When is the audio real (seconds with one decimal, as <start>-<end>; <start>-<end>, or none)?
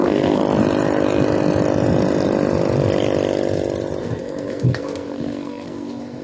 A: 0.4-4.0